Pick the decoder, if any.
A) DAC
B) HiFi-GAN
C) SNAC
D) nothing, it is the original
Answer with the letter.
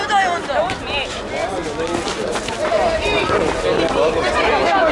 D